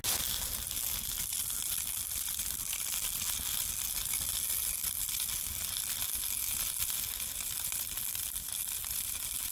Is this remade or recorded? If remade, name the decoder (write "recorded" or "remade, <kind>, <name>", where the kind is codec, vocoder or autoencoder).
recorded